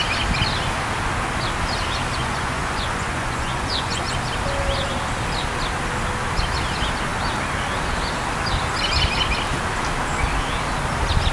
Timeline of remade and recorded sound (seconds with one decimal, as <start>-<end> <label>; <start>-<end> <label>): 0.0-2.2 recorded; 2.2-4.0 remade; 4.0-11.3 recorded